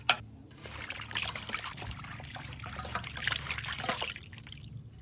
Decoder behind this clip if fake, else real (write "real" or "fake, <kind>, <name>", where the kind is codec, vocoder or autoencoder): real